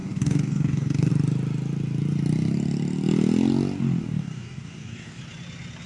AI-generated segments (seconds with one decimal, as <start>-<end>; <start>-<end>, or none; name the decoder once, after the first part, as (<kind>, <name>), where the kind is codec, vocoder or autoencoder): 0.0-1.1 (codec, DAC); 4.0-5.2